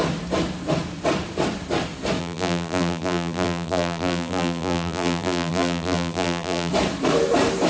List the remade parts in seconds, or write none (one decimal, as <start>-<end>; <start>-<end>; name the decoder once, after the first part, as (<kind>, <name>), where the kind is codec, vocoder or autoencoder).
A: 2.2-6.7 (vocoder, BigVGAN v2)